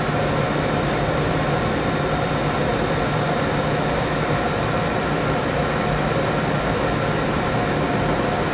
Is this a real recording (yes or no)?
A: yes